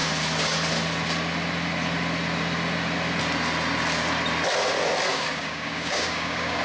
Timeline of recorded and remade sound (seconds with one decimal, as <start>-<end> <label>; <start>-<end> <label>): 0.0-5.1 recorded; 5.1-6.6 remade